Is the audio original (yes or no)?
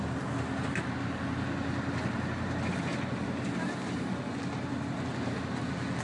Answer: yes